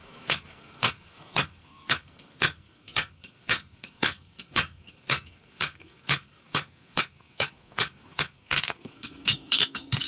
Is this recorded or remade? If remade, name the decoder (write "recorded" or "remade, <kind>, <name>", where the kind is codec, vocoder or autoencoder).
remade, codec, SNAC